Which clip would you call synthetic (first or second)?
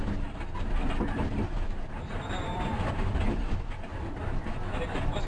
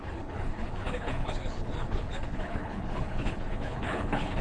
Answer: second